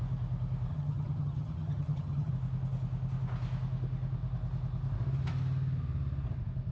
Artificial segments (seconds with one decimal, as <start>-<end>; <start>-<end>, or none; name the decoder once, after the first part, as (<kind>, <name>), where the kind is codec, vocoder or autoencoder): 0.7-2.3 (vocoder, HiFi-GAN)